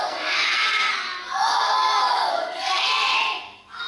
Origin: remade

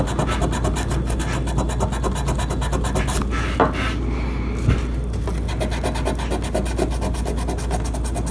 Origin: recorded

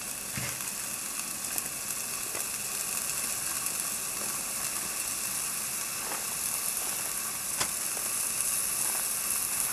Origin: recorded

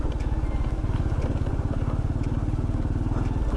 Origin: recorded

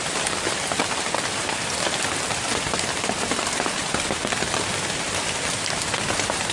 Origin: remade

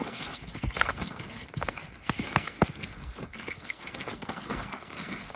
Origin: remade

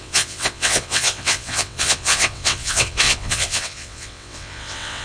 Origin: remade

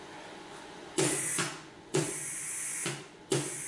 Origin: remade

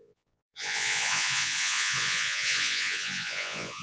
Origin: remade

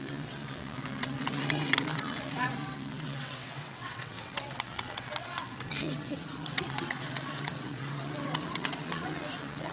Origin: remade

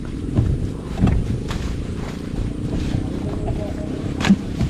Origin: remade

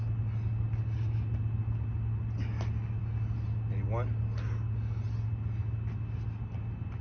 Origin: recorded